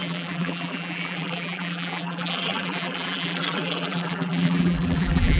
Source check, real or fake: fake